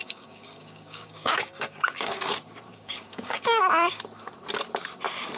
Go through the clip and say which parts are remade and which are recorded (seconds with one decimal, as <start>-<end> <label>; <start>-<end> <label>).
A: 0.0-2.3 remade; 2.3-2.7 recorded; 2.7-4.0 remade; 4.0-5.4 recorded